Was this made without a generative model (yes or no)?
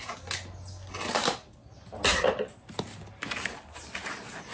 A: yes